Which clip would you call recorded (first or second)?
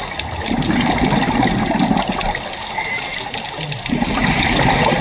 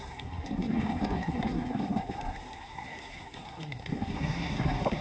first